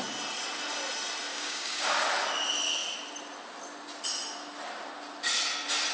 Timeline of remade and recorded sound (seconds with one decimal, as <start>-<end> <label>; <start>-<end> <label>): 0.0-1.3 recorded; 1.3-2.0 remade; 2.0-5.9 recorded